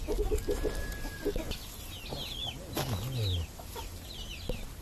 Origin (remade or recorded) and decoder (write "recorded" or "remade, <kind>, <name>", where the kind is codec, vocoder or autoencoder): recorded